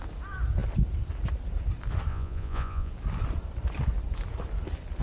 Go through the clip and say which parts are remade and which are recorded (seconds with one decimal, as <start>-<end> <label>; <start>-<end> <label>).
0.0-2.1 recorded; 2.1-2.9 remade; 2.9-5.0 recorded